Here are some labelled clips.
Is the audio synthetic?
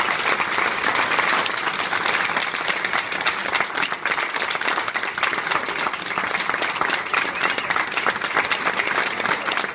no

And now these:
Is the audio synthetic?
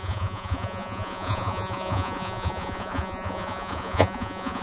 yes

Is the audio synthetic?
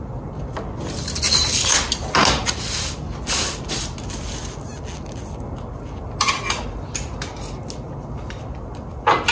no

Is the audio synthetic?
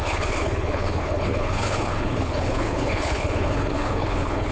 yes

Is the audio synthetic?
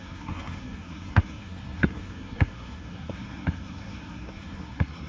yes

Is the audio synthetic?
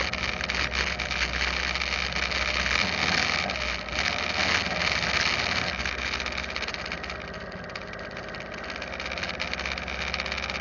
no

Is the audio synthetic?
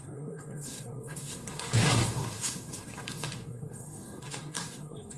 yes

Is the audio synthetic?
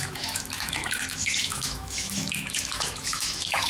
yes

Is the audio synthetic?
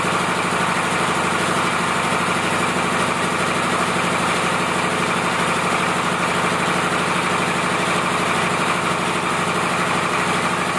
no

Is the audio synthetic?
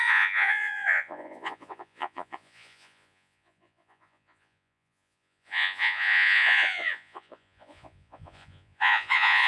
yes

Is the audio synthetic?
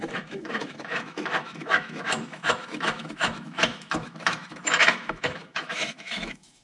yes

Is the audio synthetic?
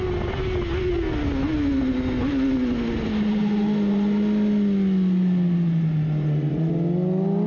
no